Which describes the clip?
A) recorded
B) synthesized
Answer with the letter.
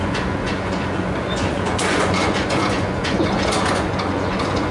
B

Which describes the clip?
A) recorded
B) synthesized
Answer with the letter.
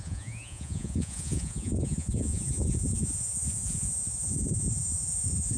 B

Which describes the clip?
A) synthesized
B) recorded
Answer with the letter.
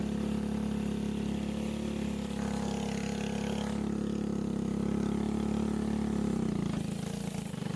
B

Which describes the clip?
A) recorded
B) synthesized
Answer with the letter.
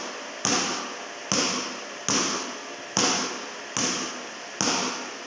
A